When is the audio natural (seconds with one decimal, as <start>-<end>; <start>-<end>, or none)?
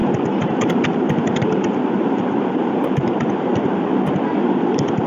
3.1-3.5; 4.1-5.1